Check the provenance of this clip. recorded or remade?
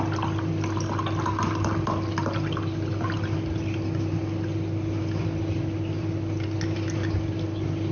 recorded